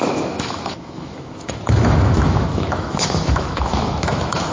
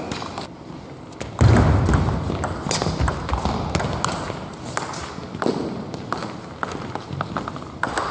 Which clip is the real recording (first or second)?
second